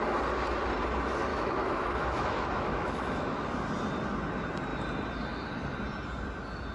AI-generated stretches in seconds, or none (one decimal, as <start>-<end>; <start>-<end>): 1.3-3.5